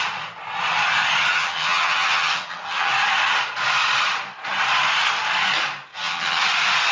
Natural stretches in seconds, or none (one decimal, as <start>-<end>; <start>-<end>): 0.0-1.3; 2.9-5.9; 6.4-6.9